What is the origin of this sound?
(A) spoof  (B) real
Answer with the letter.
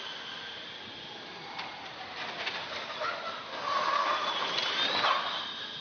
B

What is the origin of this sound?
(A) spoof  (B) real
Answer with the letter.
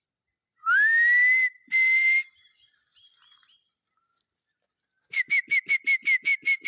B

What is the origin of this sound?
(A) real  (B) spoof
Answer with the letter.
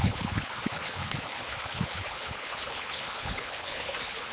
B